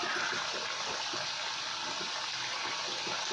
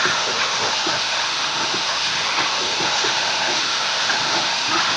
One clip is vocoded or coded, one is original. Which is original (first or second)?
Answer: first